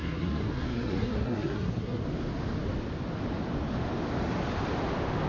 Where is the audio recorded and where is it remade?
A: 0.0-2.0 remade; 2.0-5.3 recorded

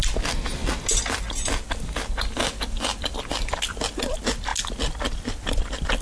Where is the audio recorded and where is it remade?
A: 0.0-6.0 recorded

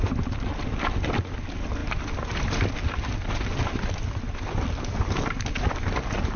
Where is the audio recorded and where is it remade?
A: 0.0-6.4 recorded

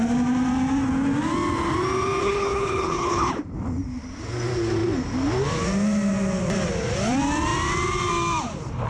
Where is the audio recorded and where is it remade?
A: 0.0-2.2 recorded; 2.2-3.3 remade; 3.3-8.9 recorded

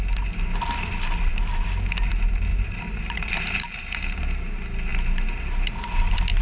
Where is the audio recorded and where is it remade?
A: 0.0-2.5 recorded; 2.5-4.2 remade; 4.2-6.4 recorded

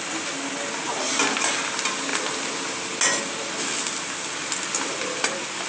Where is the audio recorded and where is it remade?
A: 0.0-5.7 recorded

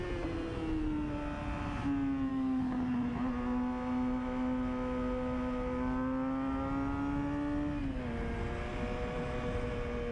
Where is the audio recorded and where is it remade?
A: 0.0-2.3 recorded; 2.3-2.9 remade; 2.9-10.1 recorded

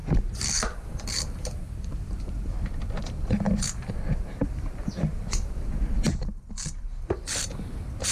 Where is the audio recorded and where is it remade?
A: 0.0-3.0 remade; 3.0-4.4 recorded; 4.4-7.6 remade; 7.6-8.1 recorded